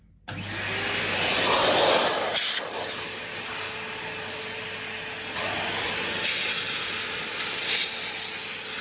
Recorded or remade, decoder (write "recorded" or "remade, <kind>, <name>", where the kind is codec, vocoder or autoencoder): recorded